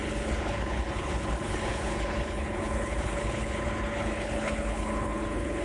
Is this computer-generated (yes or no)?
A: yes